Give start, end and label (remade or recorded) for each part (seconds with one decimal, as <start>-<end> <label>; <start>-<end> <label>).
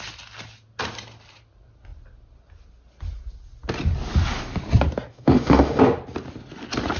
0.0-5.1 recorded; 5.1-5.8 remade; 5.8-7.0 recorded